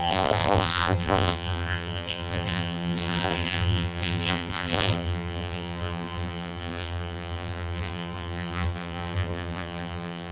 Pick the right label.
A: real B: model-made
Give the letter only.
B